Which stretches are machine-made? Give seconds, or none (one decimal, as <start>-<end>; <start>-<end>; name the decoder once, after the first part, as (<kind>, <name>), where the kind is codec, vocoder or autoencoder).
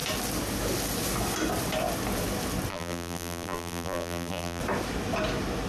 2.7-4.6 (vocoder, BigVGAN v2)